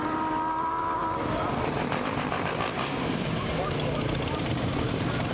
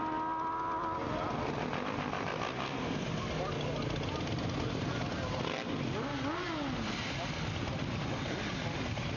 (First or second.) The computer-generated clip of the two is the first